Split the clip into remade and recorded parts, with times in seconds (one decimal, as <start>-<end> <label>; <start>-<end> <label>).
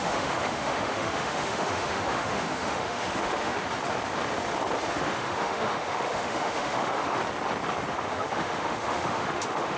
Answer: 0.0-3.6 remade; 3.6-4.9 recorded; 4.9-7.2 remade; 7.2-7.9 recorded; 7.9-9.8 remade